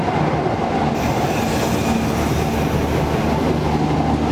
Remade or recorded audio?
recorded